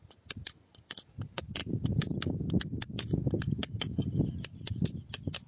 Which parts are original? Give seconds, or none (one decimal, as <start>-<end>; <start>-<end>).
0.0-5.5